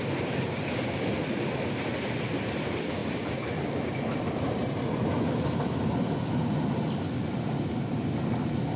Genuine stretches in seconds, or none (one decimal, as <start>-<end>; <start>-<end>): 0.0-8.8